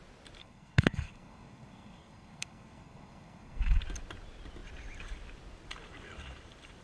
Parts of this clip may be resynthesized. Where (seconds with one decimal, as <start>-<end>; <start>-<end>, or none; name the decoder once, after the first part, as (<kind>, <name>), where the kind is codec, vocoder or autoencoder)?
0.4-3.8 (codec, SNAC)